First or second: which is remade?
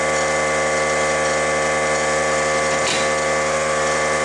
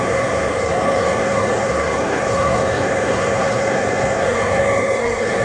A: second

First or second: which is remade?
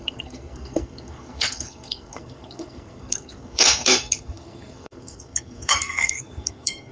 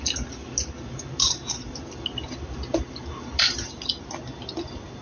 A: first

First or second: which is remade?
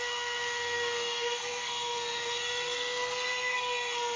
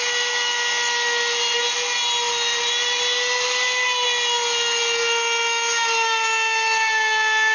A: first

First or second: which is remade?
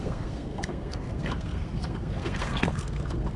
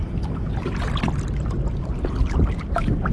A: first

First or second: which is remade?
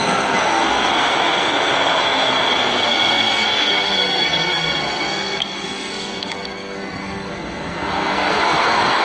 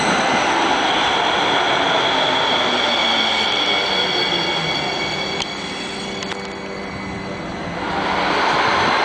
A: first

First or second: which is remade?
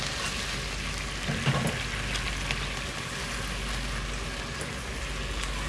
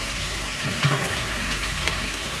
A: second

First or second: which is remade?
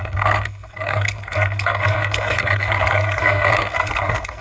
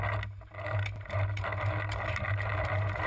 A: first